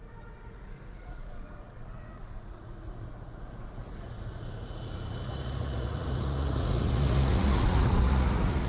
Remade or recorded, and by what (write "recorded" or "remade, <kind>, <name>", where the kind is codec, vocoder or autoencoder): remade, vocoder, Vocos